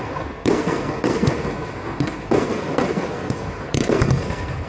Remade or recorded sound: remade